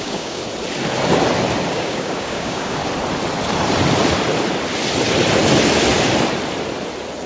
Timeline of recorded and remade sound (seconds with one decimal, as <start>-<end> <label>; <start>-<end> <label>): 0.0-0.4 remade; 0.4-1.7 recorded; 1.7-2.8 remade; 2.8-7.3 recorded